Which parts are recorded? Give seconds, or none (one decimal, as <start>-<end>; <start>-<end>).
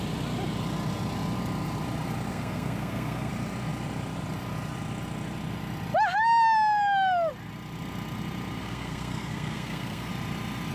0.0-2.3; 3.3-8.6; 10.1-10.7